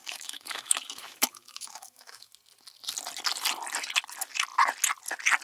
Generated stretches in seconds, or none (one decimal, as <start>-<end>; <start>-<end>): 0.0-2.3